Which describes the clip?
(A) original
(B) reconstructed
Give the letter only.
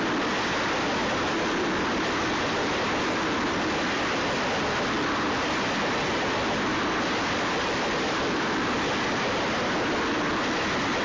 A